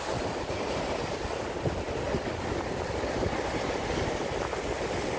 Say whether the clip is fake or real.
real